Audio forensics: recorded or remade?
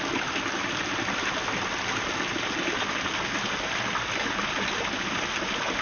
recorded